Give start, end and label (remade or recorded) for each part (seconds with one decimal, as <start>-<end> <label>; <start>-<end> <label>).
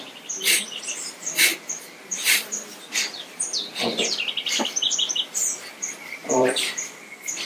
0.0-7.5 remade